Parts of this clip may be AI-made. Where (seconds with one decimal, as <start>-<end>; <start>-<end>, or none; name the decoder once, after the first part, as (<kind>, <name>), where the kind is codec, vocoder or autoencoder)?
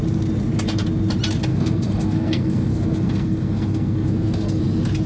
1.5-4.6 (codec, SNAC)